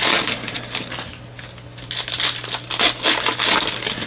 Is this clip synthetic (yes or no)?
no